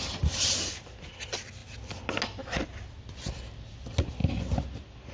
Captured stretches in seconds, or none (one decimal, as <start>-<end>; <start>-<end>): 0.0-5.1